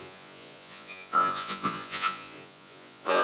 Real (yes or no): no